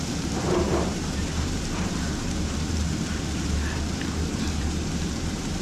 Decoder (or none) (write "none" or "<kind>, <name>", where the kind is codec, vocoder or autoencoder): vocoder, BigVGAN v2